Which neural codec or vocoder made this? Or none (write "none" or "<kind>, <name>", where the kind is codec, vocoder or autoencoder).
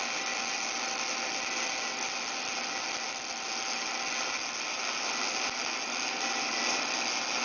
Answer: none